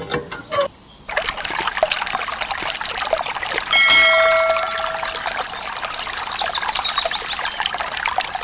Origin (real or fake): real